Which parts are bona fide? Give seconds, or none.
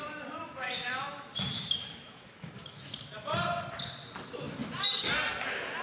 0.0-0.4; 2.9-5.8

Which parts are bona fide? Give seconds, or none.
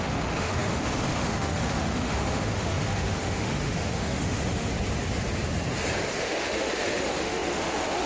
4.7-6.2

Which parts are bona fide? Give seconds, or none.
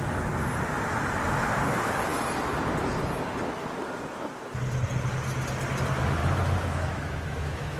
0.0-6.2